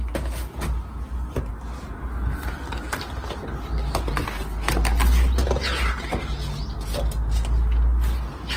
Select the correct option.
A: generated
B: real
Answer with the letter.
B